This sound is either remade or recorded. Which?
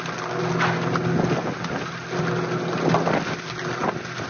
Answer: recorded